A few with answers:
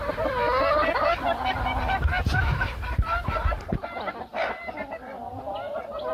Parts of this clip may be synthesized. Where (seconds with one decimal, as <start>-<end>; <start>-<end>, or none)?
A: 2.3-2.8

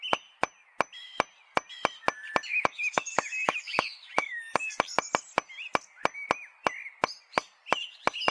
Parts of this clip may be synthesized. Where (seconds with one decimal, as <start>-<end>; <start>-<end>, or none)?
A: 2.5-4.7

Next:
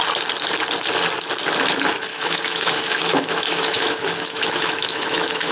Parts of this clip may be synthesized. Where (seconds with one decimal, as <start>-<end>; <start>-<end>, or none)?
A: 2.1-5.5

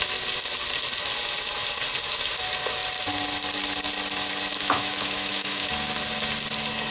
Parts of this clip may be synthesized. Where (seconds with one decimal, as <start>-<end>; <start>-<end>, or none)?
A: 4.6-5.7

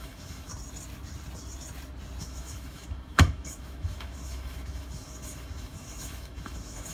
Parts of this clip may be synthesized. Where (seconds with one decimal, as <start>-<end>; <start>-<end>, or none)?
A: 0.0-0.5; 2.2-6.9

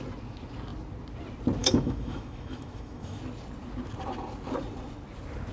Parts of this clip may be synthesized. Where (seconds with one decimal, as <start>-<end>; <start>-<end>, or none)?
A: 1.6-3.2

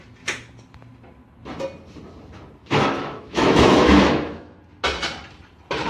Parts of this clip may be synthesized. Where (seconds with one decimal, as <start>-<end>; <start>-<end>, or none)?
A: 2.6-4.6